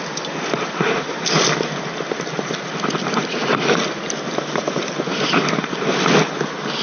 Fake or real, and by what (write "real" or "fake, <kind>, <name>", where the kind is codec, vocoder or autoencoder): real